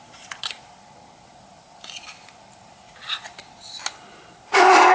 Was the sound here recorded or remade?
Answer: recorded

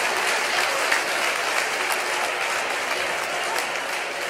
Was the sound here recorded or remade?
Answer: recorded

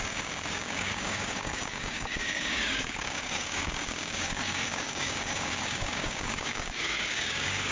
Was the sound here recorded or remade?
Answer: remade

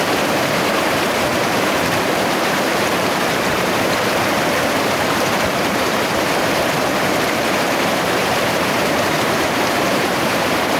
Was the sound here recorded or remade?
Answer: remade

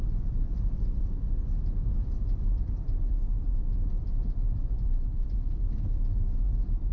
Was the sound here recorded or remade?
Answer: remade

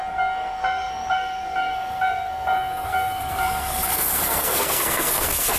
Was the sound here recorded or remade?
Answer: remade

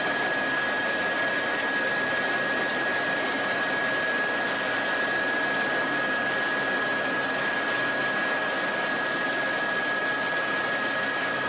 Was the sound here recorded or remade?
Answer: recorded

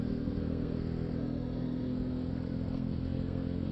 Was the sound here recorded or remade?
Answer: remade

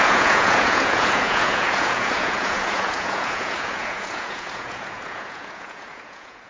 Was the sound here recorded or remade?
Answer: remade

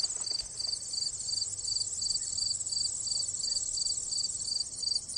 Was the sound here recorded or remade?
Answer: recorded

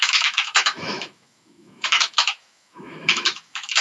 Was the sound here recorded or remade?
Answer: remade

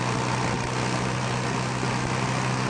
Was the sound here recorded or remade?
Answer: recorded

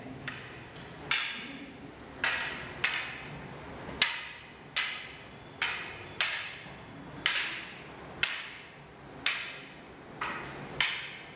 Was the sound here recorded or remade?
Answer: recorded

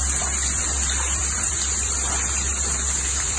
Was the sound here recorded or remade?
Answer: remade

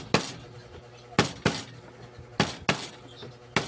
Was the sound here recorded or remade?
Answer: recorded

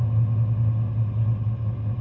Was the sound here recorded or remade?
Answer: recorded